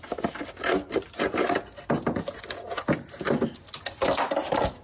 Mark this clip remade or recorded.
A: recorded